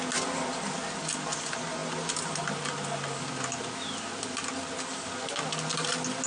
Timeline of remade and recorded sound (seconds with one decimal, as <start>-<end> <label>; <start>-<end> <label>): 0.0-6.3 recorded